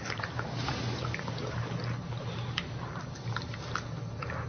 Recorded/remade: recorded